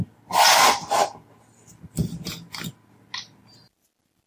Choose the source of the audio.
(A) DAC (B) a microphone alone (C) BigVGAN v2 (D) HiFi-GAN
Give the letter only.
B